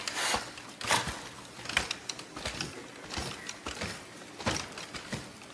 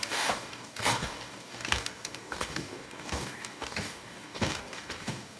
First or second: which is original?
first